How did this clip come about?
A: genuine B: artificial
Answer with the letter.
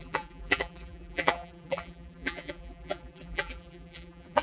B